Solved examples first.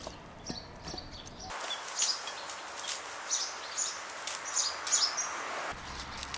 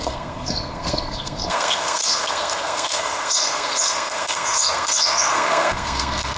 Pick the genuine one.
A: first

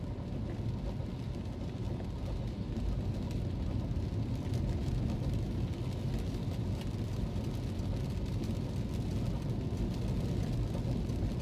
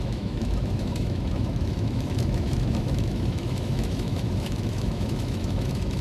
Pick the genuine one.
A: first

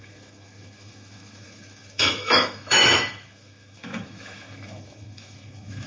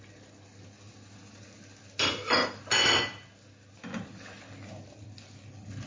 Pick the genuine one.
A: second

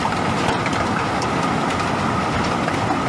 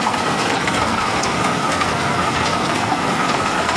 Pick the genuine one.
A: first